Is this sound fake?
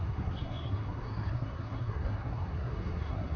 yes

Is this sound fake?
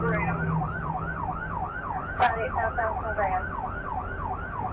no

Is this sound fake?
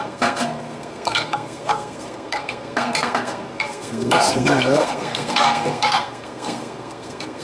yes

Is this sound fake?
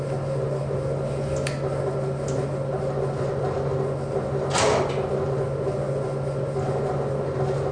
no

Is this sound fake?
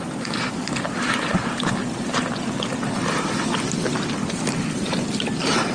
no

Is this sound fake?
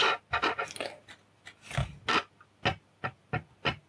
no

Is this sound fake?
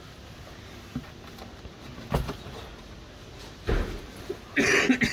no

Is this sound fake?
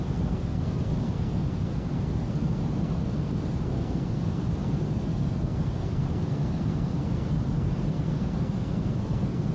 yes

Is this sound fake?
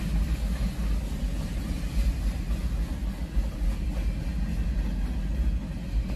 no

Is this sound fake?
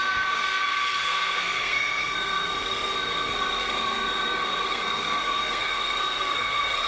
yes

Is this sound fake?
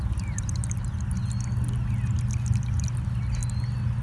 no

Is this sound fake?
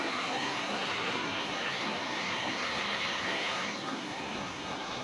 yes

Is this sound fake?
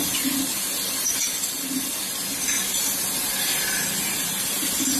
no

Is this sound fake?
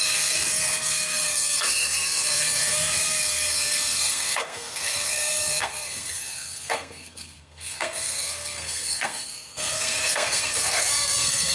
yes